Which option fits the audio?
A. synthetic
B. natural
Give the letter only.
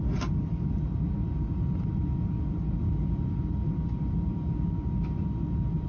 B